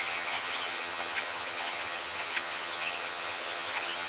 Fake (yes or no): yes